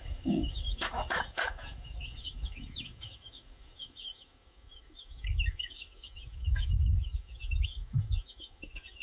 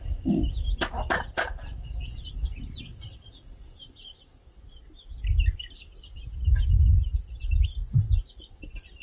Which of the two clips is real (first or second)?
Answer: second